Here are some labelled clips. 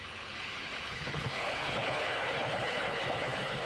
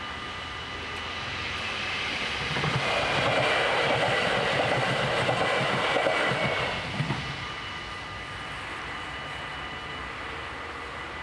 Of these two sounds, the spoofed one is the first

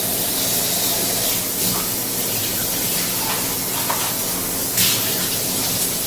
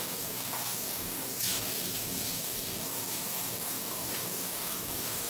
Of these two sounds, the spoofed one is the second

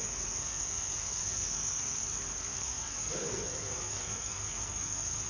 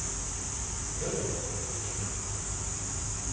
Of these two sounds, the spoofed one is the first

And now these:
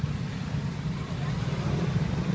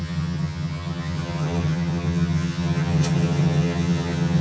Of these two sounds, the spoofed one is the second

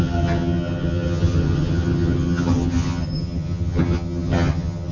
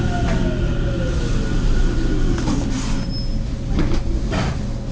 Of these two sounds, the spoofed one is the first